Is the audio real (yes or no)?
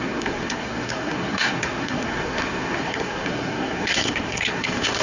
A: no